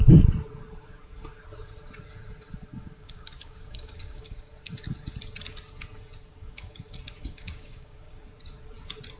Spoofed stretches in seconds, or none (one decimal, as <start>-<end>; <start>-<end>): 2.7-4.5; 6.3-6.8; 7.2-8.2